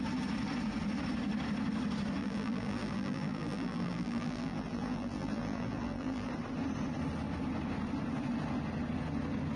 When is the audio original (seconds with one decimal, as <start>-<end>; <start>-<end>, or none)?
0.0-2.2; 6.3-9.6